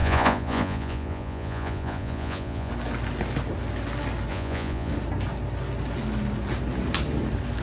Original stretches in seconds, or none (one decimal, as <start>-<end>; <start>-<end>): 2.7-4.3; 4.9-7.6